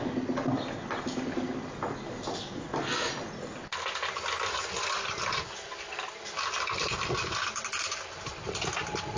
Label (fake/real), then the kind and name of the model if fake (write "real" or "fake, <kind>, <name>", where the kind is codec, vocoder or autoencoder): real